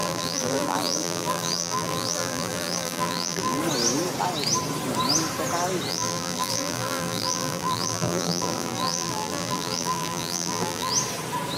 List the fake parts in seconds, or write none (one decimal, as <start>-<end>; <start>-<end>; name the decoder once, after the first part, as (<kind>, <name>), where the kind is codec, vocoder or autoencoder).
0.0-3.6 (vocoder, BigVGAN v2); 5.9-10.9